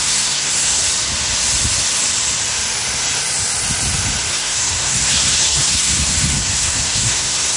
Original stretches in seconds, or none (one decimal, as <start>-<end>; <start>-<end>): 0.8-4.3